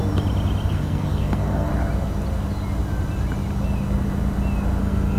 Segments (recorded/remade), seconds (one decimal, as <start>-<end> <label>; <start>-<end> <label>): 0.0-0.7 recorded; 0.7-1.7 remade; 1.7-4.8 recorded; 4.8-5.2 remade